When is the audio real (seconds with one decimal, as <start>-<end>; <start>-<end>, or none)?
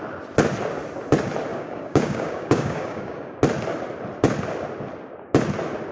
0.0-1.5; 3.4-5.9